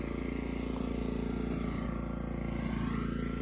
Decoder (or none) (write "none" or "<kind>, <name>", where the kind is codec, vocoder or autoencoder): none